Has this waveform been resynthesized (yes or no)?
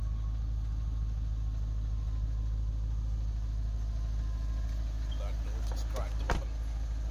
no